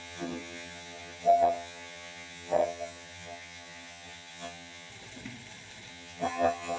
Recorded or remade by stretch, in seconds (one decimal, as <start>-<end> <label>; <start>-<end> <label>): 0.0-4.9 remade; 4.9-5.9 recorded; 5.9-6.8 remade